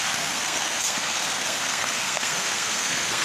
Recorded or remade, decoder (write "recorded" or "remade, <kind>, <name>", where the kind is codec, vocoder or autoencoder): remade, codec, SNAC